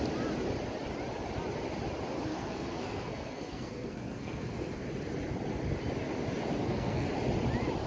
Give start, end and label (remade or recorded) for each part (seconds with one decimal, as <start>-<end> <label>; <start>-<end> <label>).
0.0-2.3 recorded; 2.3-4.8 remade; 4.8-6.6 recorded; 6.6-7.1 remade; 7.1-7.9 recorded